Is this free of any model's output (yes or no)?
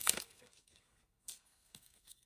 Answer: no